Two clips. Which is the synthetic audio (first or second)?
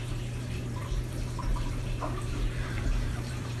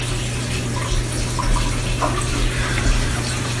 first